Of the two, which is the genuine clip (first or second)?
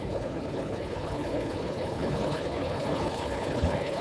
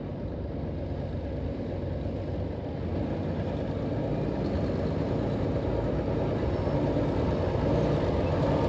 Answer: second